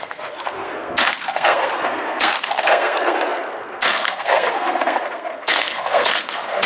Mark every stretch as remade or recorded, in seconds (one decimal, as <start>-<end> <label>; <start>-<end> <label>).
0.0-6.7 remade